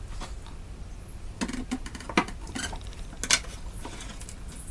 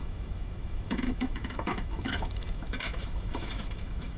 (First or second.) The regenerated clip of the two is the second